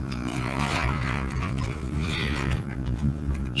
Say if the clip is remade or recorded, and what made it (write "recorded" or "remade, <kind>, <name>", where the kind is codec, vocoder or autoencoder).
remade, vocoder, Vocos